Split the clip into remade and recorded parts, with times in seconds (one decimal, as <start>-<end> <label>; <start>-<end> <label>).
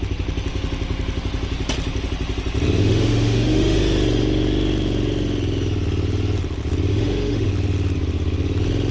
0.0-2.8 recorded; 2.8-3.8 remade; 3.8-6.9 recorded; 6.9-7.5 remade; 7.5-8.9 recorded